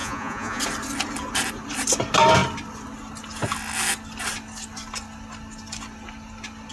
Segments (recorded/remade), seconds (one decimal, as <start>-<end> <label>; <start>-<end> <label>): 0.0-0.6 remade; 0.6-6.7 recorded